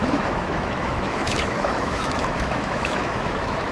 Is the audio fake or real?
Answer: fake